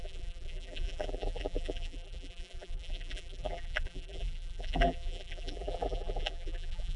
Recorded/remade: remade